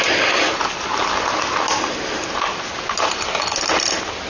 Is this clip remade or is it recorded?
recorded